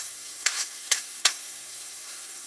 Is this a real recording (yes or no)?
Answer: no